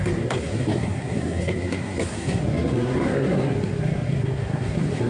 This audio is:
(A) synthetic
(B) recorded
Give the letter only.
A